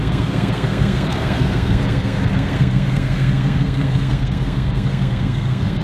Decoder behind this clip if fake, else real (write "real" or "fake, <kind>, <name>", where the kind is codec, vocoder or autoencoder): fake, codec, SNAC